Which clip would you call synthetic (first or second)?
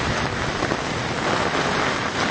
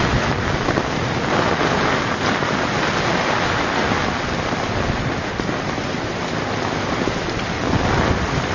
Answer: first